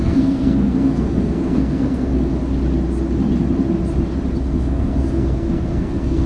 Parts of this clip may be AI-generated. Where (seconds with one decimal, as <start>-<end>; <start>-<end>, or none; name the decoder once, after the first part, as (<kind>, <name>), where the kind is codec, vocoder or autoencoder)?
0.0-2.3 (codec, SNAC); 4.4-6.3